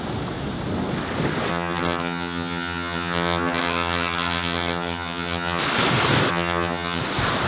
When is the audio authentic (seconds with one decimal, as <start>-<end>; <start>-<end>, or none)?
0.0-1.5; 5.6-6.3; 7.0-7.5